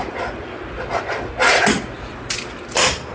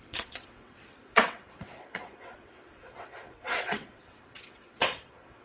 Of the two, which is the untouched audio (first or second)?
first